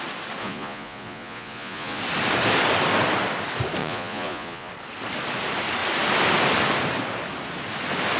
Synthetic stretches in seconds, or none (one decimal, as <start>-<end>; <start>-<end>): 0.4-2.0; 3.8-4.7

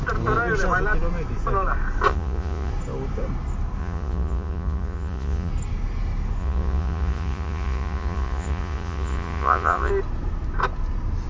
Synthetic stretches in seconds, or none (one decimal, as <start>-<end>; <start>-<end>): 2.1-2.7; 3.8-5.5; 6.4-9.9

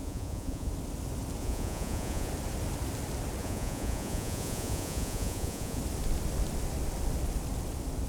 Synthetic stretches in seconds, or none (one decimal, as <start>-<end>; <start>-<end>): 0.0-0.7; 1.4-2.3; 3.4-5.8

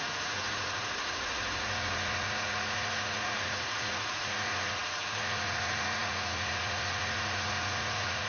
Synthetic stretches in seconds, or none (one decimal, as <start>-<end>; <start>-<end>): 0.0-8.3

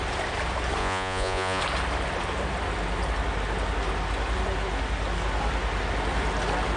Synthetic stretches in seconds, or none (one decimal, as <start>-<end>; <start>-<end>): 0.8-1.6

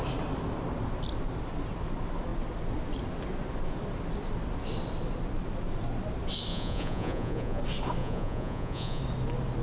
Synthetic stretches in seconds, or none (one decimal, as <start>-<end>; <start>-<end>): 6.5-7.6; 8.0-9.0

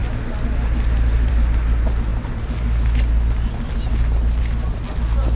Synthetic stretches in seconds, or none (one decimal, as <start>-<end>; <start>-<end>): none